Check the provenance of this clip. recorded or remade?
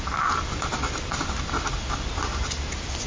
recorded